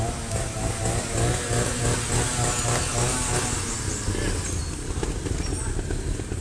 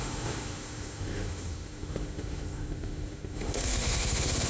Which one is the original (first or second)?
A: first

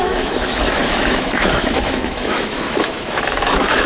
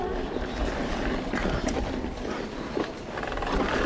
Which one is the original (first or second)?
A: second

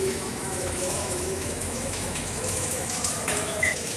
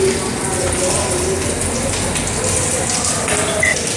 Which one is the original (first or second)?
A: second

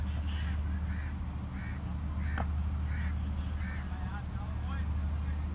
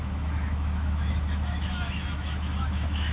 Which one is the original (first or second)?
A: first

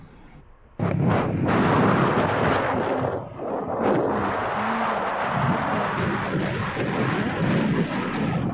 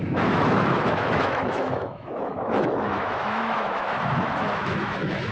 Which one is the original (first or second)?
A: first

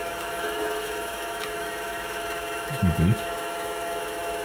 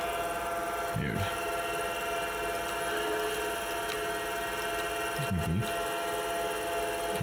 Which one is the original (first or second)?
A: second